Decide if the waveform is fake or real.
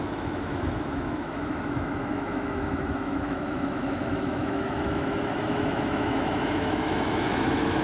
fake